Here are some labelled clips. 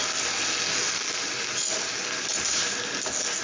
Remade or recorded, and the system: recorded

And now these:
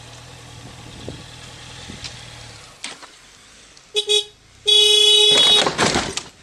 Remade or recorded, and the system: recorded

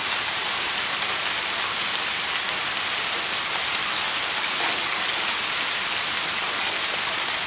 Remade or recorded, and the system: recorded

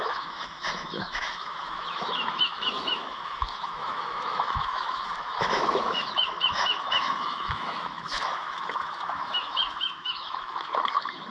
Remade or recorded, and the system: remade, autoencoder, DAC-VAE